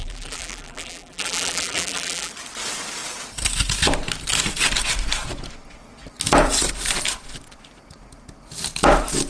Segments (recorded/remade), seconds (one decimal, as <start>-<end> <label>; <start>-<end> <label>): 0.0-2.3 remade; 2.3-9.3 recorded